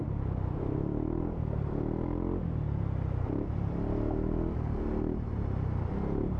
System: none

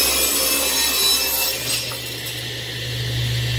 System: none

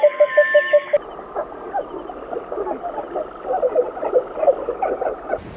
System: none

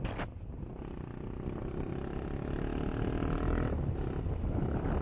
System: none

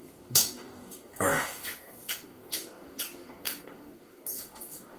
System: codec, DAC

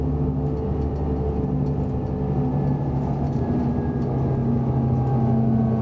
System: none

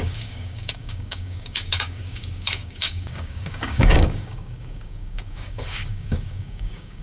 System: codec, DAC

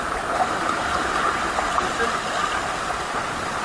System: none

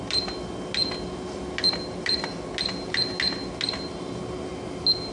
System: none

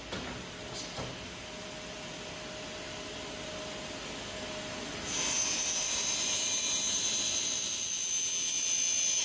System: none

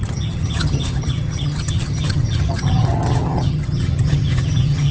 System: vocoder, HiFi-GAN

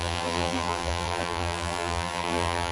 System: vocoder, BigVGAN v2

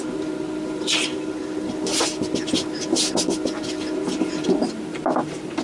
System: none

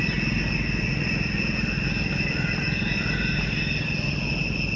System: none